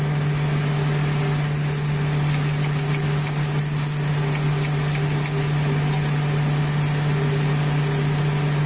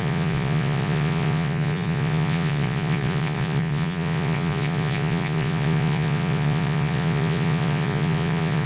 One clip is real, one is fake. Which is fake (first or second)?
second